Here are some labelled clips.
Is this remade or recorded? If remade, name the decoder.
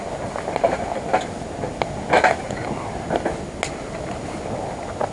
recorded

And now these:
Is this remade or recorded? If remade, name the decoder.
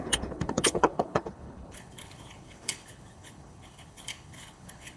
remade, codec, HILCodec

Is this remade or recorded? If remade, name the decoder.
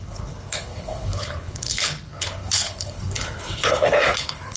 remade, codec, HILCodec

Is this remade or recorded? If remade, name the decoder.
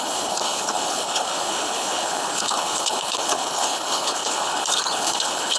remade, codec, HILCodec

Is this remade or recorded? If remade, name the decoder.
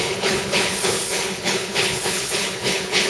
remade, codec, HILCodec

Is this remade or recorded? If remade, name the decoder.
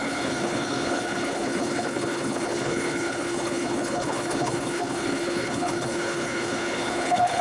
remade, codec, HILCodec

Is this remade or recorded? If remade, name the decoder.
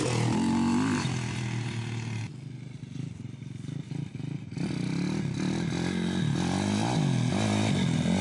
recorded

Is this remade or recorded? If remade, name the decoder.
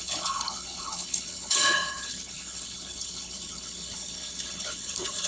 remade, codec, HILCodec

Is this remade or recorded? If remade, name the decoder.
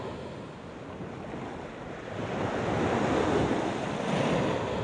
recorded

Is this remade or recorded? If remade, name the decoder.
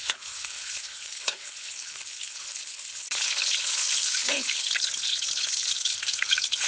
remade, codec, HILCodec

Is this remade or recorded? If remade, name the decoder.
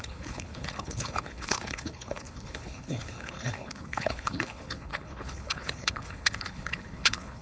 remade, codec, HILCodec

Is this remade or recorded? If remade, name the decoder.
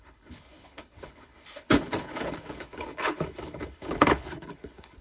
remade, codec, HILCodec